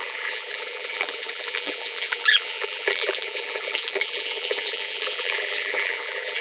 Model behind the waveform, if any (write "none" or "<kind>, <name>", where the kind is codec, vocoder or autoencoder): vocoder, BigVGAN v2